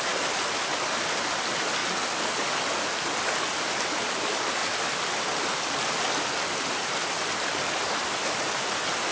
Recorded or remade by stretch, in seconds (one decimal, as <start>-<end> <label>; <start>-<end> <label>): 0.0-9.1 recorded